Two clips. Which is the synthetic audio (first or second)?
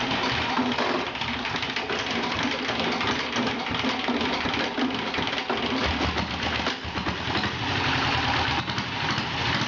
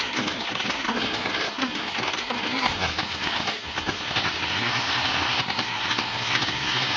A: second